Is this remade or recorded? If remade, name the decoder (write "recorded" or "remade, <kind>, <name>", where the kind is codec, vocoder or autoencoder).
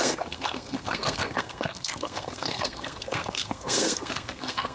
remade, codec, SNAC